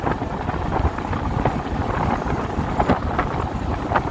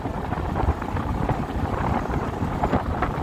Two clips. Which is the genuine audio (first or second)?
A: first